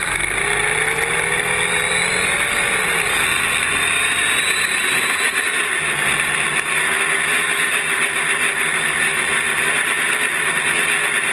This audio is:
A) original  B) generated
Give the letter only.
A